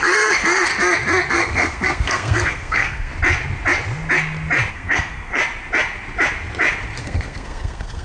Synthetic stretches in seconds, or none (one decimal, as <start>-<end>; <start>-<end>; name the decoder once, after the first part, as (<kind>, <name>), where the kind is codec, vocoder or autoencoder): 0.0-0.7 (codec, SNAC); 1.3-3.1; 4.7-5.4; 7.0-8.0